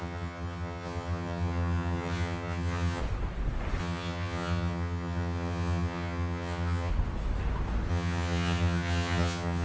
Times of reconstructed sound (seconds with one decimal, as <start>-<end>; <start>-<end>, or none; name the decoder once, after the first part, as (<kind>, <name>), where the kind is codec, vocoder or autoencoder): 0.0-3.0 (vocoder, HiFi-GAN); 3.8-6.9; 7.9-9.6